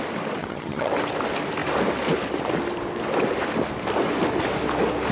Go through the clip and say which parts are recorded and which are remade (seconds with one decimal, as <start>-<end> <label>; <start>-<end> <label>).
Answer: 0.0-0.4 recorded; 0.4-0.9 remade; 0.9-5.1 recorded

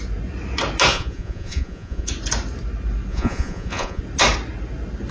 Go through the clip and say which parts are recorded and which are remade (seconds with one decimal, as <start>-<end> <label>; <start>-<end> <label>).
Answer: 0.0-0.9 recorded; 0.9-2.1 remade; 2.1-3.1 recorded; 3.1-4.0 remade; 4.0-5.1 recorded

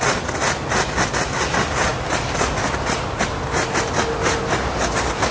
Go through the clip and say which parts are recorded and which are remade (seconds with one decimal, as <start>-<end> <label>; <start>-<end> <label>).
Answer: 0.0-5.3 recorded

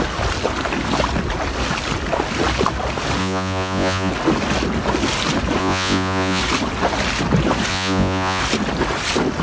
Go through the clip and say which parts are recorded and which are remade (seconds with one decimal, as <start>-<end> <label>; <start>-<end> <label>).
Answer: 0.0-3.2 recorded; 3.2-4.1 remade; 4.1-5.6 recorded; 5.6-6.4 remade; 6.4-7.7 recorded; 7.7-8.4 remade; 8.4-9.4 recorded

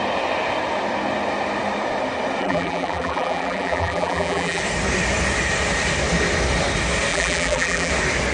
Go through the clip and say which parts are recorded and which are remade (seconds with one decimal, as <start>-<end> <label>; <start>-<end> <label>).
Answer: 0.0-2.4 recorded; 2.4-4.6 remade; 4.6-7.1 recorded; 7.1-7.9 remade; 7.9-8.3 recorded

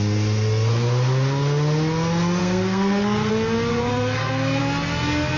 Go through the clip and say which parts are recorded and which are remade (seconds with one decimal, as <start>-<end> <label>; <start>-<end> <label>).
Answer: 0.0-2.4 recorded; 2.4-3.3 remade; 3.3-3.7 recorded; 3.7-4.6 remade; 4.6-5.4 recorded